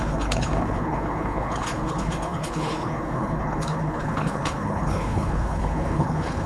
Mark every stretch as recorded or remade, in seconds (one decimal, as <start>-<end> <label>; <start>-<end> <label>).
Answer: 0.0-6.5 remade